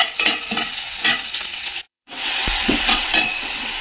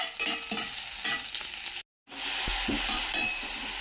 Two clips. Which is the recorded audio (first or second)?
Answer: second